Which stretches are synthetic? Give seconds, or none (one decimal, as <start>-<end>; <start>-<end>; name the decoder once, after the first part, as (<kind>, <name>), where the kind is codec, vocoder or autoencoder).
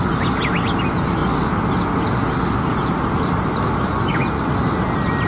none